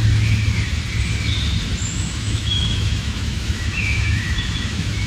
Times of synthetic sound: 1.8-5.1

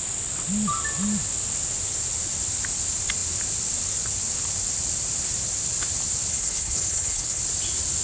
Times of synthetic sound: 6.3-7.4

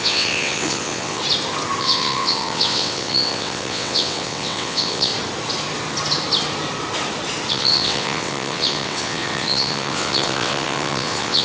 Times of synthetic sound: 0.0-1.2; 1.8-5.1; 7.5-11.4